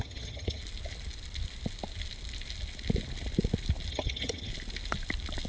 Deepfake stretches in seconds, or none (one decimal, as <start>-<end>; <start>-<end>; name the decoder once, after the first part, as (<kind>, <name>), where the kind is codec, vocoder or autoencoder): 0.0-0.6 (vocoder, HiFi-GAN); 3.9-4.5